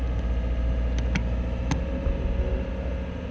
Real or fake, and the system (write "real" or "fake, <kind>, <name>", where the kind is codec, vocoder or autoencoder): real